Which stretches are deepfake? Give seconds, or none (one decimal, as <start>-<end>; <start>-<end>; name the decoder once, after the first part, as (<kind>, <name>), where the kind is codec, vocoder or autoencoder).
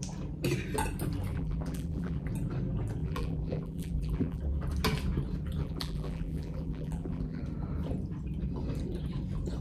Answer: 1.3-2.3 (vocoder, BigVGAN v2); 3.0-4.4; 5.6-7.4